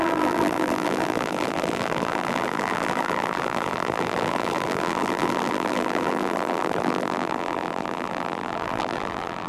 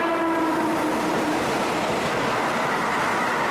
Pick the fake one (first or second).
first